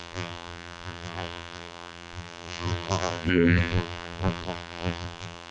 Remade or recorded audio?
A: remade